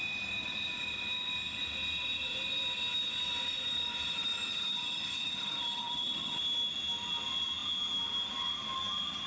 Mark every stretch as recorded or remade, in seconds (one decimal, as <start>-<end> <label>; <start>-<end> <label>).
0.0-4.5 recorded; 4.5-6.4 remade; 6.4-9.3 recorded